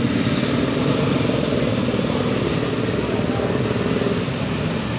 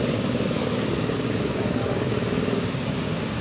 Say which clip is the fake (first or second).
second